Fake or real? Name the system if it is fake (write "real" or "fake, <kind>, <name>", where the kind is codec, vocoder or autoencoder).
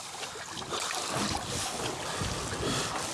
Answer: real